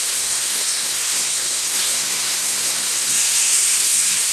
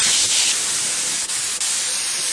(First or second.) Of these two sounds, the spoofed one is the first